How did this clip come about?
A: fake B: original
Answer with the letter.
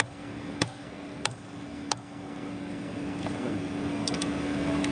A